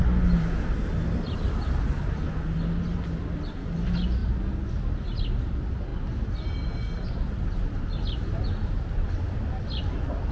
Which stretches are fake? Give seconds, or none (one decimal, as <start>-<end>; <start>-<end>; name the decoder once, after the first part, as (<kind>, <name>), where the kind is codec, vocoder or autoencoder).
none